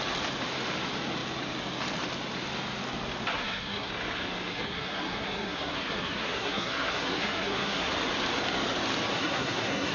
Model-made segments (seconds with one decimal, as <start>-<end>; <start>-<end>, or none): 3.3-3.9; 4.5-7.9; 9.1-9.9